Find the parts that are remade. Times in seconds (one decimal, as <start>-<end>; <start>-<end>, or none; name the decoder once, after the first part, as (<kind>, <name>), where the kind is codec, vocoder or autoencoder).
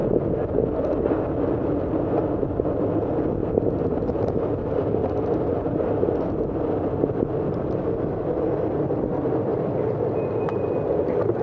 none